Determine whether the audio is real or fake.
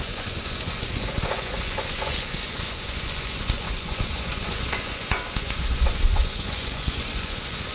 fake